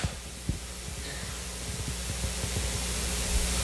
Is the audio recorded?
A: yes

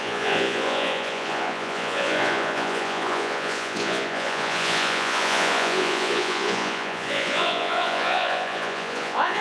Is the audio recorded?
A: no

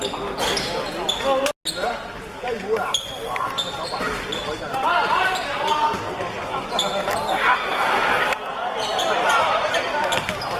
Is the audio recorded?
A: yes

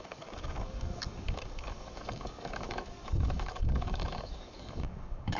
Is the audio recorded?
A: no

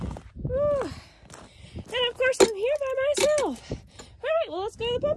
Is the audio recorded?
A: yes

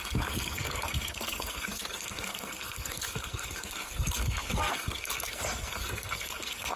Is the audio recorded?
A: no